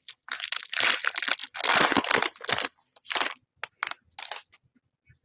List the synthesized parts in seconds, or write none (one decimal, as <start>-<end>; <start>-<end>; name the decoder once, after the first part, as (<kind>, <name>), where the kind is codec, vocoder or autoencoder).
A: none